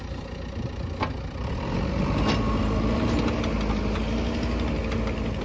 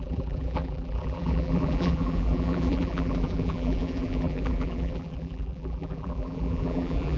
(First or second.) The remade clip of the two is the second